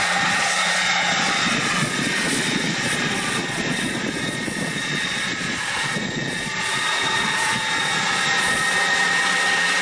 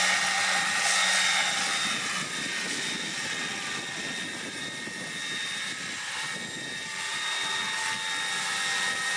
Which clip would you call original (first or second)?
second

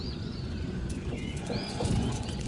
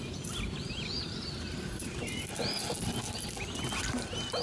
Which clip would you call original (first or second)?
second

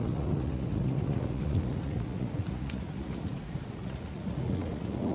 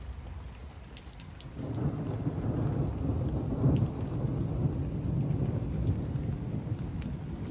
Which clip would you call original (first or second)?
second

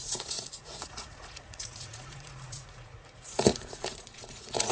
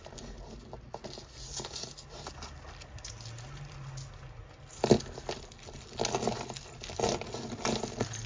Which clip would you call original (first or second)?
second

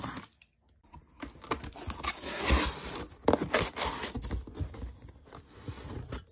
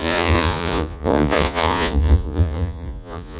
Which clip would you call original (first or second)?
first